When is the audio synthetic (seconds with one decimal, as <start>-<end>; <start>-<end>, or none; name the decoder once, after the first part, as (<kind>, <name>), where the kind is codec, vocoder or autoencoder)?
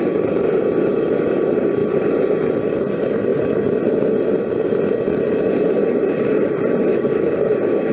6.9-7.5 (codec, DAC)